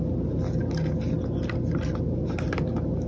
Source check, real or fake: real